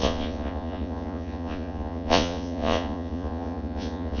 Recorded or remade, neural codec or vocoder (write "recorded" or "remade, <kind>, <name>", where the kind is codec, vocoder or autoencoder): remade, vocoder, Vocos